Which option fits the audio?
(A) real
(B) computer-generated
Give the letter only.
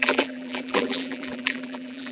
B